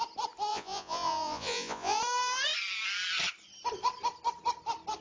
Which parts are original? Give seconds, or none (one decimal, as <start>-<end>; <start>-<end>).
0.0-0.5; 2.0-5.0